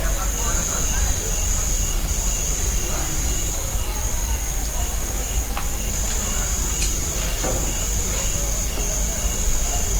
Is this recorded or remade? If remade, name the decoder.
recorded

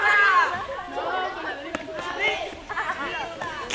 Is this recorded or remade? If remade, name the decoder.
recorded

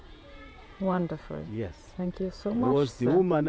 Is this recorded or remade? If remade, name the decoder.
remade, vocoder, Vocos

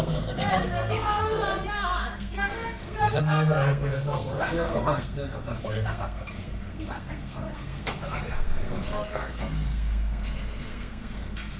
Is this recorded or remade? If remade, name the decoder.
remade, codec, SNAC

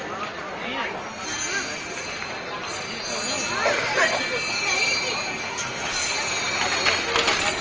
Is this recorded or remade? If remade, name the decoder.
recorded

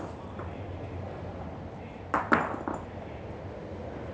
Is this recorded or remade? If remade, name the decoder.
recorded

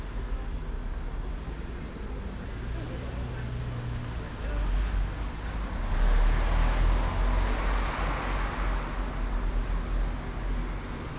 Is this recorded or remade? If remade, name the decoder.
recorded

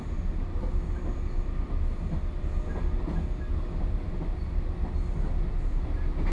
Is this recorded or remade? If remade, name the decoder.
recorded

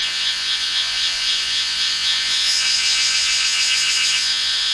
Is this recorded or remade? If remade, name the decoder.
remade, vocoder, Vocos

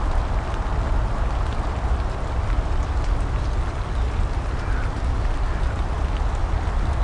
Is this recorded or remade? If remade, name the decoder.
recorded